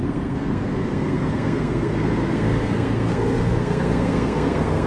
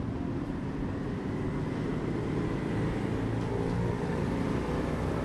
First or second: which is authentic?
second